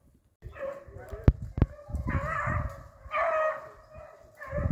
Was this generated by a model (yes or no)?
no